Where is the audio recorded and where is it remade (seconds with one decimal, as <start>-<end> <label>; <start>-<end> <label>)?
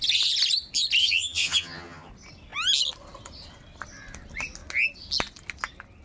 0.0-1.0 recorded; 1.0-2.1 remade; 2.1-6.0 recorded